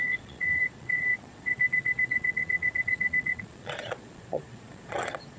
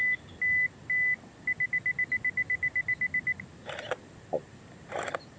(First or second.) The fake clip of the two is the first